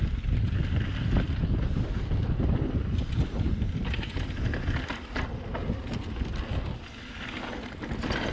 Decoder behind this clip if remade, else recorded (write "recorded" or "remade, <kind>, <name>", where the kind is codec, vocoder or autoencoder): recorded